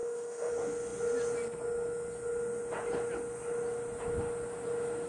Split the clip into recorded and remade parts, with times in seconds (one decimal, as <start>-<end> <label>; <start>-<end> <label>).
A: 0.0-0.5 remade; 0.5-5.1 recorded